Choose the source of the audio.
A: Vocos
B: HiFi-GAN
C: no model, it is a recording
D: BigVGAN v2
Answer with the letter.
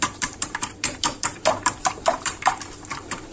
D